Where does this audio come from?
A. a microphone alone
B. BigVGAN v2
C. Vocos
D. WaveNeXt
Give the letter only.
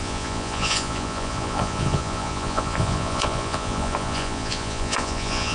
C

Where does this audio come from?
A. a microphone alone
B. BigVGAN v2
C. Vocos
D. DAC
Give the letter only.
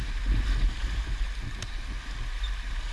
A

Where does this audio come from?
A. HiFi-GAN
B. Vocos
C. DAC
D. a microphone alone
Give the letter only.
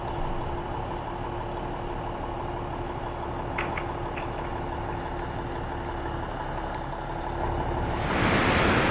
D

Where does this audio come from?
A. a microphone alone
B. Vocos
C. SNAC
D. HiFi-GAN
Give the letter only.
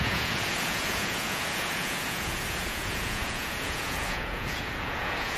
B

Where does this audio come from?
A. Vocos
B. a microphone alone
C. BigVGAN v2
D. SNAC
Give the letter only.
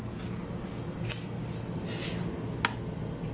B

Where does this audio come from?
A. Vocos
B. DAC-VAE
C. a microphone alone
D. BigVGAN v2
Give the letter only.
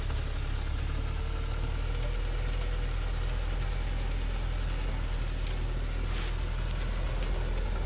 C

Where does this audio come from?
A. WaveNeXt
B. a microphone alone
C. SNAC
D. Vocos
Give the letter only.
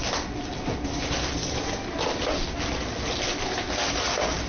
B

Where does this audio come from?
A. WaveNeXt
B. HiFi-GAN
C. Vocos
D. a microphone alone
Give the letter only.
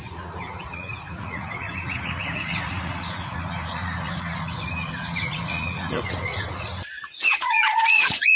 C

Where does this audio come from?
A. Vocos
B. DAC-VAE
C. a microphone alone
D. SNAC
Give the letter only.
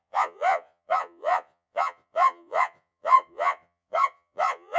A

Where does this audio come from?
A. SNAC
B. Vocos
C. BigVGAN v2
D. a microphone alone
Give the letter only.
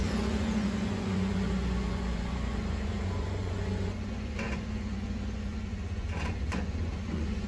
B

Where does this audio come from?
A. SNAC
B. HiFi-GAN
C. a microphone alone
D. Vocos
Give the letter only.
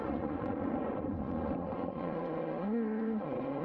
D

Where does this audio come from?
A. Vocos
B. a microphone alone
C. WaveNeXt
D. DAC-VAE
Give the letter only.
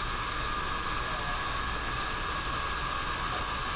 B